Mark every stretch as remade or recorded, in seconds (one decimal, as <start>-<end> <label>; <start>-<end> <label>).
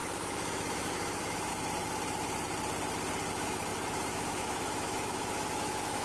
0.0-1.5 remade; 1.5-3.3 recorded; 3.3-6.0 remade